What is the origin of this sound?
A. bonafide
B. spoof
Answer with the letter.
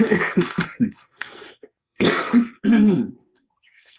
B